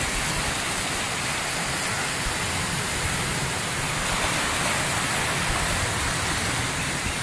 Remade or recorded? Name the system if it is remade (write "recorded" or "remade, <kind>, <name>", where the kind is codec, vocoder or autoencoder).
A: recorded